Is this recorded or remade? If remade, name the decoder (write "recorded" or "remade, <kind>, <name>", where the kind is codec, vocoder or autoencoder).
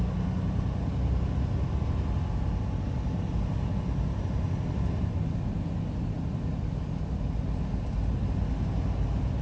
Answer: recorded